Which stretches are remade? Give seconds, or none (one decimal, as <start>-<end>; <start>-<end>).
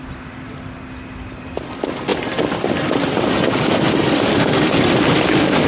none